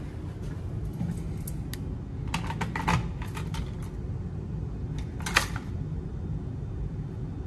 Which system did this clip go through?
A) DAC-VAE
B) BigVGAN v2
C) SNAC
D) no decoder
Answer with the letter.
D